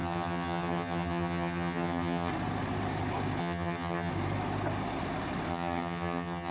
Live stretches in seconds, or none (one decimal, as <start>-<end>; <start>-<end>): 2.3-3.4; 4.1-5.5